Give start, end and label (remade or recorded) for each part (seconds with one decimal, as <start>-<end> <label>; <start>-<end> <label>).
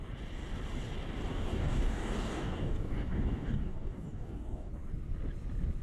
0.0-1.3 recorded; 1.3-4.7 remade; 4.7-5.8 recorded